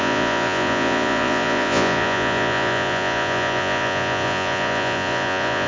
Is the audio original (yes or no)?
no